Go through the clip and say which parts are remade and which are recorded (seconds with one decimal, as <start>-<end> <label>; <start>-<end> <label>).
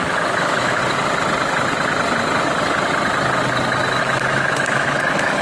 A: 0.0-0.8 remade; 0.8-4.0 recorded; 4.0-5.4 remade